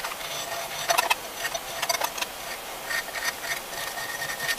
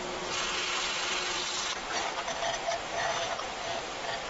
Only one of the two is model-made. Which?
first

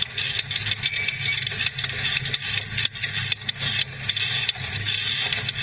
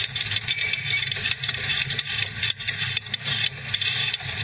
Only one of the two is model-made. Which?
second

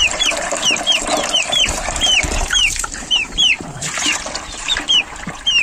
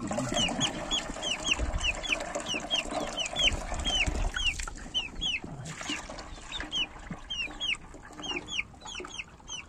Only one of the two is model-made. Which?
first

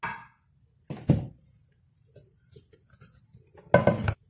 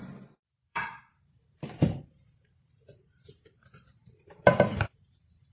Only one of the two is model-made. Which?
second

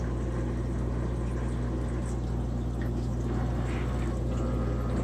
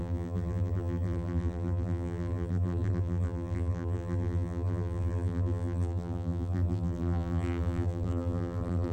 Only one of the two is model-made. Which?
second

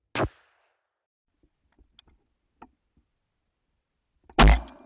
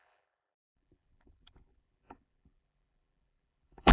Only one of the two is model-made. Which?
second